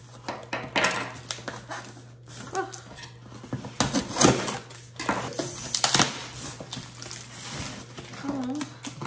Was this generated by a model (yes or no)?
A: no